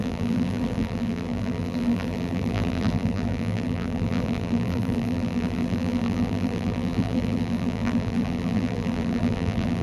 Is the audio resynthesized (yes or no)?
yes